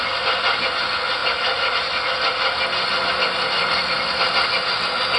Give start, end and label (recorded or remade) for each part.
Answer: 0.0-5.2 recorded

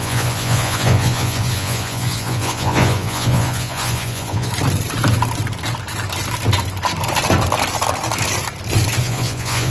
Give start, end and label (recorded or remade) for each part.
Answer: 0.0-4.5 remade; 4.5-9.0 recorded; 9.0-9.7 remade

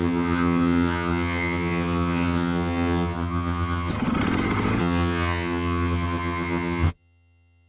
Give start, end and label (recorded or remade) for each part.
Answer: 0.0-3.9 remade; 3.9-4.8 recorded; 4.8-7.7 remade

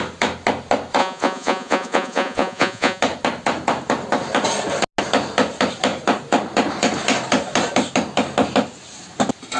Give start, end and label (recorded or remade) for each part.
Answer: 0.0-1.0 recorded; 1.0-3.0 remade; 3.0-9.6 recorded

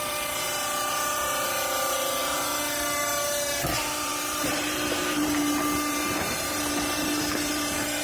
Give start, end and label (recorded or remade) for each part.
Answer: 0.0-2.2 remade; 2.2-3.0 recorded; 3.0-8.0 remade

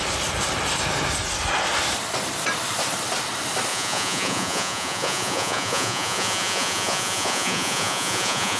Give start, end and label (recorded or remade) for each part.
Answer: 0.0-3.7 recorded; 3.7-8.6 remade

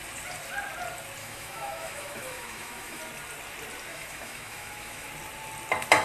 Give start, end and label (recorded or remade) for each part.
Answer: 0.0-1.2 recorded; 1.2-3.0 remade; 3.0-3.9 recorded; 3.9-5.1 remade; 5.1-6.0 recorded

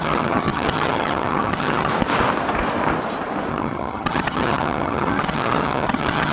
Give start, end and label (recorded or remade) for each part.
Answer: 0.0-1.9 remade; 1.9-3.5 recorded; 3.5-6.3 remade